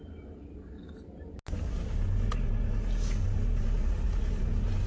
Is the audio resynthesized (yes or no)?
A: no